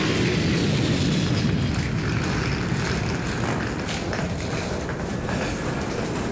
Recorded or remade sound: recorded